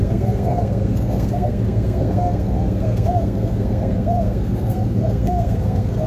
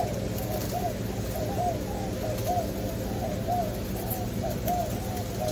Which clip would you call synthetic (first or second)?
first